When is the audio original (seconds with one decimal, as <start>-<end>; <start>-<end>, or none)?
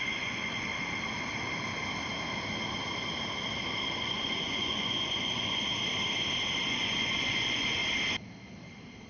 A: 0.7-4.0; 5.7-6.6; 7.8-9.1